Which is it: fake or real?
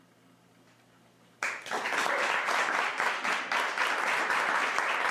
real